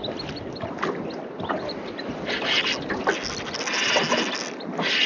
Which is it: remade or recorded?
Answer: recorded